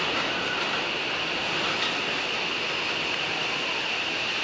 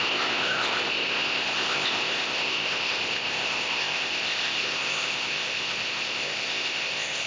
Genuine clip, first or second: first